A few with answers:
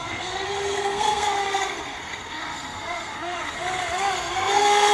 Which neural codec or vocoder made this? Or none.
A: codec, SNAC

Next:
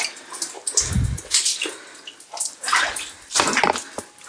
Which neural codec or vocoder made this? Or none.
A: none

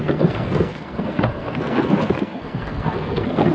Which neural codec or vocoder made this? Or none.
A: codec, SNAC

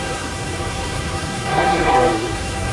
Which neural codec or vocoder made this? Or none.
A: codec, SNAC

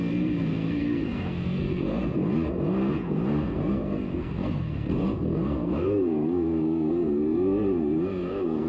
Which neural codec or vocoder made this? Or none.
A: codec, SNAC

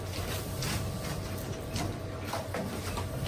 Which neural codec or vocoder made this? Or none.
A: none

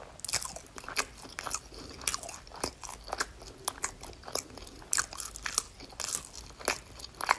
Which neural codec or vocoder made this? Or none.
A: none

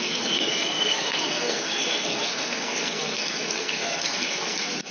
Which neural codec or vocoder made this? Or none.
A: codec, SNAC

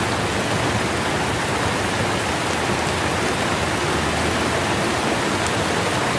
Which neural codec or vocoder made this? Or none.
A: none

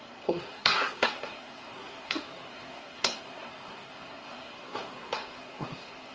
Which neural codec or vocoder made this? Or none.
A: codec, SNAC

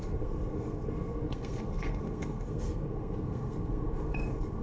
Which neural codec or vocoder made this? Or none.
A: codec, SNAC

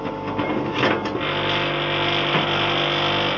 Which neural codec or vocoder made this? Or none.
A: none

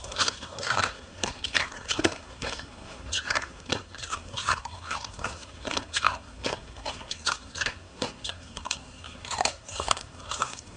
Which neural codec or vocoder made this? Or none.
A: codec, SNAC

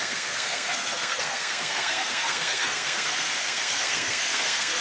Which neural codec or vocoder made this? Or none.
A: codec, SNAC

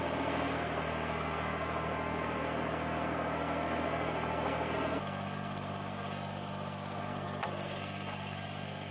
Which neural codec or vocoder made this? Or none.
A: codec, SNAC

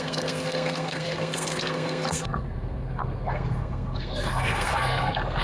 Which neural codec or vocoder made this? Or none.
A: codec, SNAC